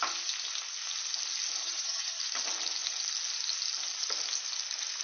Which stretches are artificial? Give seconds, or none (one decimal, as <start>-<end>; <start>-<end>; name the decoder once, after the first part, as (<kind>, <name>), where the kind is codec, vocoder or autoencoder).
1.6-2.2 (vocoder, HiFi-GAN)